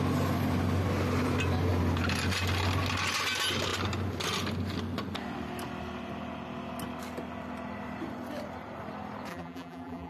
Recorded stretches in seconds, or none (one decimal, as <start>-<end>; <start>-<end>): 0.0-9.3